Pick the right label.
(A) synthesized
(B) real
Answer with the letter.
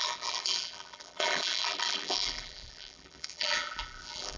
A